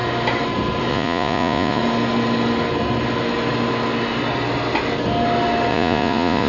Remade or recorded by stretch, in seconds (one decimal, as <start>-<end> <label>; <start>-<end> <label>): 0.0-0.9 recorded; 0.9-1.8 remade; 1.8-5.7 recorded; 5.7-6.5 remade